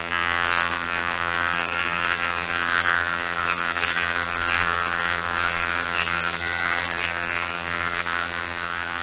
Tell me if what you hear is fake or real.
fake